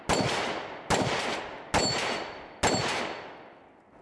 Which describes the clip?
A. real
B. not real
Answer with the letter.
A